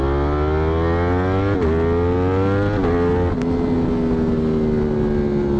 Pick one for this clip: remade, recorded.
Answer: recorded